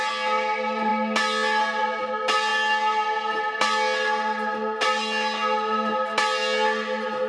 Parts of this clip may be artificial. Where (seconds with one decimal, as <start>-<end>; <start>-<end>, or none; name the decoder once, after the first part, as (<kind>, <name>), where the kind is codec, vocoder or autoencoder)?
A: none